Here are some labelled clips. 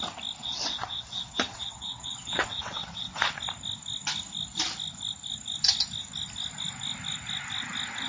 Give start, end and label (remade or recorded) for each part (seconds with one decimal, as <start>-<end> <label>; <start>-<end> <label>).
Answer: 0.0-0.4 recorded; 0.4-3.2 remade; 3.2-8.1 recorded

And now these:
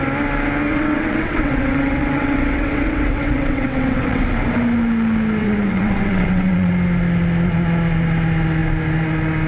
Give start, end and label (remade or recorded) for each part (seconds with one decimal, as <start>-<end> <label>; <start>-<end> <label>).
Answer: 0.0-0.7 recorded; 0.7-4.2 remade; 4.2-5.4 recorded; 5.4-6.7 remade; 6.7-9.5 recorded

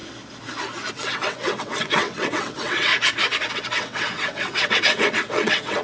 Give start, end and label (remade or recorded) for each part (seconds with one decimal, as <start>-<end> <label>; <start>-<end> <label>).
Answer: 0.0-0.9 recorded; 0.9-2.9 remade; 2.9-3.5 recorded; 3.5-5.8 remade